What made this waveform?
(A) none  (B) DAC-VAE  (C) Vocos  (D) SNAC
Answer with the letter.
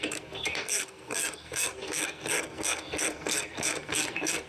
D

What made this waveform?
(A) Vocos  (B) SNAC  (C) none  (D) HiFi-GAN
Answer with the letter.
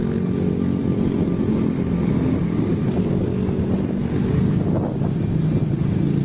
C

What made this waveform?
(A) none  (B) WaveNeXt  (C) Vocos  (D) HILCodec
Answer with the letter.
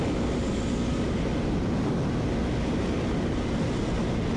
A